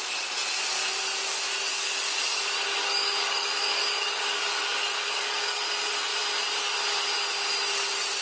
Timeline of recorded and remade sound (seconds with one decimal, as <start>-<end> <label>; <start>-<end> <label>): 0.0-1.7 recorded; 1.7-2.4 remade; 2.4-2.8 recorded; 2.8-5.6 remade; 5.6-8.2 recorded